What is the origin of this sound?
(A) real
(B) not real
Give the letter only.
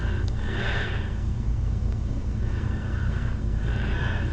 B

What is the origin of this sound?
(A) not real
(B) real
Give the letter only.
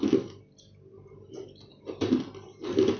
B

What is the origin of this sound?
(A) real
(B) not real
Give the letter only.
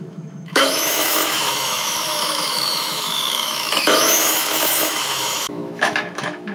B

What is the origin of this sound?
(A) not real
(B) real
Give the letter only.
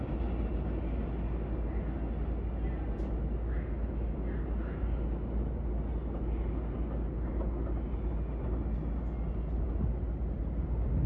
B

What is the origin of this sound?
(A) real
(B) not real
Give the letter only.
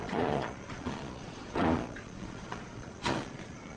B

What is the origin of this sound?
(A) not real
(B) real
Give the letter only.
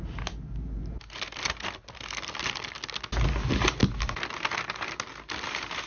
B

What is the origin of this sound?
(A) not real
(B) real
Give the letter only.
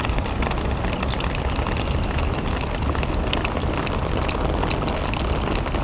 B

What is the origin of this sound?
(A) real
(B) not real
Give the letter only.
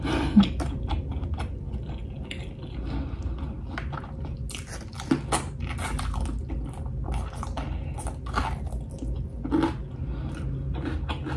A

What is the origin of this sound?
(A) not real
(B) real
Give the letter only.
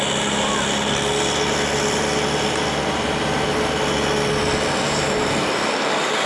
B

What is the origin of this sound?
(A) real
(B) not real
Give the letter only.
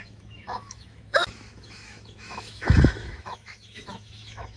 B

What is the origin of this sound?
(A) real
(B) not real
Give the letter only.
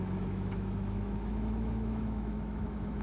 B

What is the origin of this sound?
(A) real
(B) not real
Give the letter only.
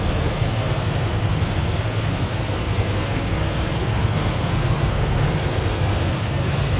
B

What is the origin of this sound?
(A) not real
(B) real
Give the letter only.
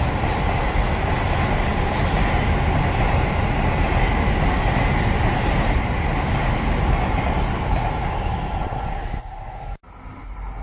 B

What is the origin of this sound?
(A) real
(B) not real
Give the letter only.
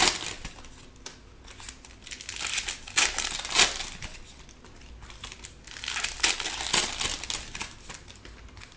A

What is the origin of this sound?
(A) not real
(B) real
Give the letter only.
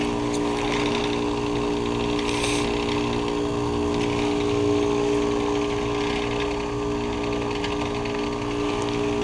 B